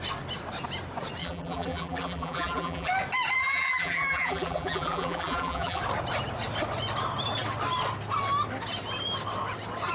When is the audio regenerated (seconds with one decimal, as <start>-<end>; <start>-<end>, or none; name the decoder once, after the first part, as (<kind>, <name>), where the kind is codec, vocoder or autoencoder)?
1.2-2.9 (vocoder, BigVGAN v2); 3.4-5.8